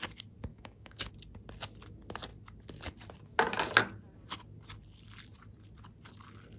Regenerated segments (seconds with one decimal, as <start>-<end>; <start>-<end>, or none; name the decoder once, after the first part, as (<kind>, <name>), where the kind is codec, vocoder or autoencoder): 0.5-1.1 (codec, DAC)